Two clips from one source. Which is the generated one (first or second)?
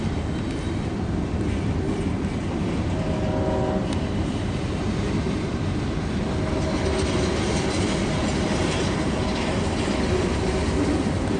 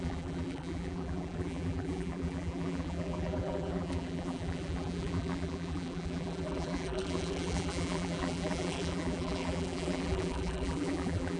second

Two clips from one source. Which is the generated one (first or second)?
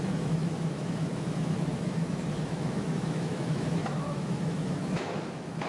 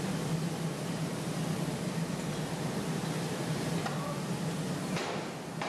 first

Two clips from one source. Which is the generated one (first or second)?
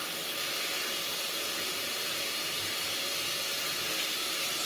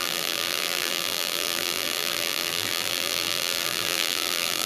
second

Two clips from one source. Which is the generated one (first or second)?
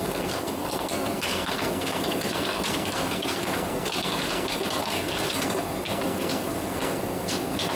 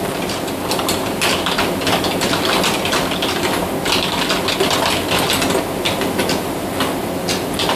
first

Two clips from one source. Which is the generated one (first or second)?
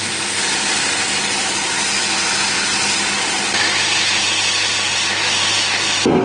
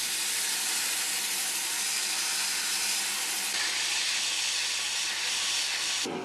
second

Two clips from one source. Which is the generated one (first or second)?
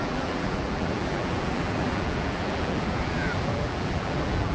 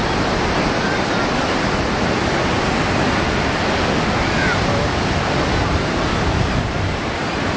first